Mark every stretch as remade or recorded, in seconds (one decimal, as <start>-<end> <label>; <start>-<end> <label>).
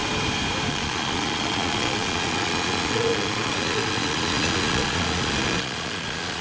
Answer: 0.0-0.7 recorded; 0.7-6.4 remade